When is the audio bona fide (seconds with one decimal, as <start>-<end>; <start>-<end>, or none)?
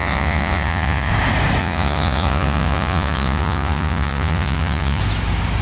1.1-1.6; 5.0-5.6